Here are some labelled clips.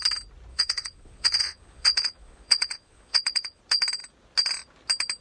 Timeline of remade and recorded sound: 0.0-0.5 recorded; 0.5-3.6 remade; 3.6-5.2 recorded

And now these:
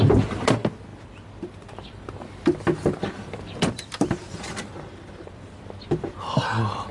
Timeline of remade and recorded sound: 0.0-6.9 recorded

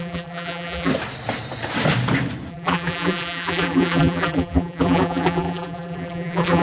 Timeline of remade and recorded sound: 0.0-0.9 remade; 0.9-2.5 recorded; 2.5-6.6 remade

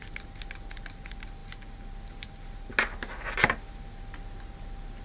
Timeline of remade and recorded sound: 0.0-5.0 recorded

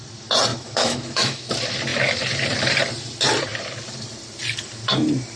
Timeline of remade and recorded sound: 0.0-0.5 recorded; 0.5-1.5 remade; 1.5-5.4 recorded

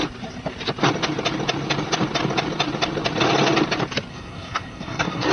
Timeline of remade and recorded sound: 0.0-4.1 recorded; 4.1-5.3 remade

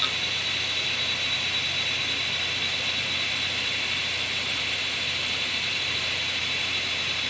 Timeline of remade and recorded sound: 0.0-2.0 recorded; 2.0-6.4 remade; 6.4-7.3 recorded

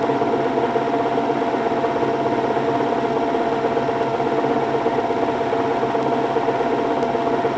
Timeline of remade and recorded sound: 0.0-7.6 recorded